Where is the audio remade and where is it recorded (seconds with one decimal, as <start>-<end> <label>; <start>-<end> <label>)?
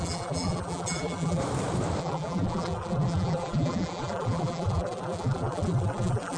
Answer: 0.0-1.4 remade; 1.4-2.0 recorded; 2.0-6.4 remade